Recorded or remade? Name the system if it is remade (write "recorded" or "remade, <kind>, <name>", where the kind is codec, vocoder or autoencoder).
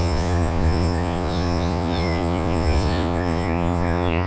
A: remade, vocoder, Vocos